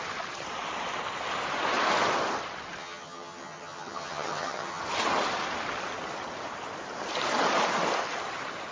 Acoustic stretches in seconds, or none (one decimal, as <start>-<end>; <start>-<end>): 0.0-2.8; 4.8-8.7